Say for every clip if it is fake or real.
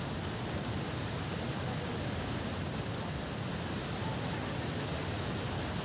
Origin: real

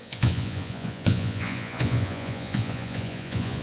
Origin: fake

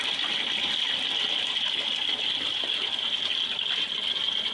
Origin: real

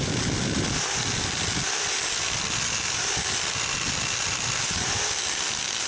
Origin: real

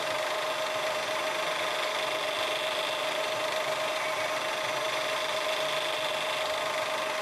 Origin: real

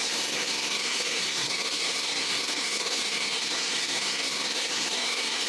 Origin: fake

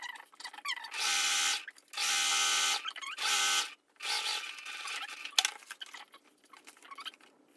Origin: real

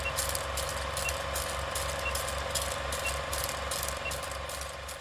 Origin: real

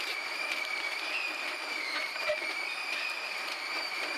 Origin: fake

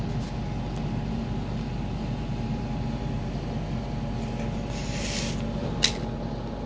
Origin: real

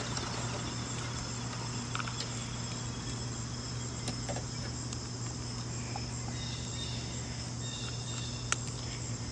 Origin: real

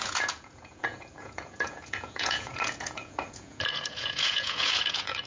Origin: fake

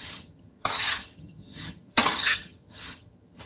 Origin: fake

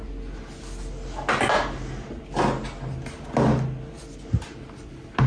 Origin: real